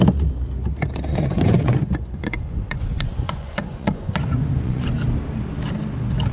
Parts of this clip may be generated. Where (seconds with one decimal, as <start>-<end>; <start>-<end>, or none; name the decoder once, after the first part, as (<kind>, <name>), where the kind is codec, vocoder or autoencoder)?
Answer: 1.1-4.9 (vocoder, Vocos)